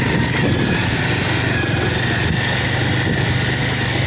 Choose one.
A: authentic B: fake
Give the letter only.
A